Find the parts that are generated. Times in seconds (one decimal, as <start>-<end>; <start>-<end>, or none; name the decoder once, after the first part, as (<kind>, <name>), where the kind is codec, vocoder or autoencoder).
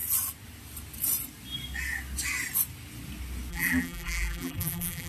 3.5-5.1 (vocoder, BigVGAN v2)